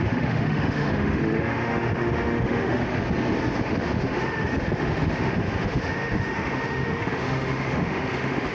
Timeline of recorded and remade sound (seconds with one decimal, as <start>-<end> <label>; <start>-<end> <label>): 0.0-2.9 remade; 2.9-3.6 recorded; 3.6-8.5 remade